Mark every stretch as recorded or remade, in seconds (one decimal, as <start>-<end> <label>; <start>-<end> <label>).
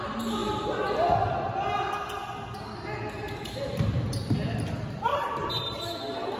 0.0-5.1 recorded; 5.1-5.8 remade; 5.8-6.4 recorded